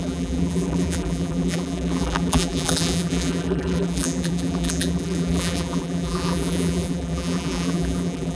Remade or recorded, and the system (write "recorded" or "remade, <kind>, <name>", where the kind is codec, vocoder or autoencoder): remade, vocoder, BigVGAN v2